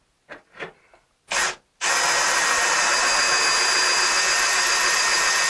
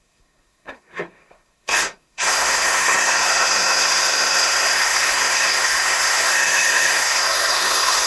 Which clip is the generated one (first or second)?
second